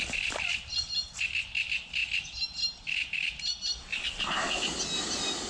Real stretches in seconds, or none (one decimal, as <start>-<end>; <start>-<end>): 0.0-5.5